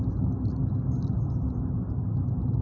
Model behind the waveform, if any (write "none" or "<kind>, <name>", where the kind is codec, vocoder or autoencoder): none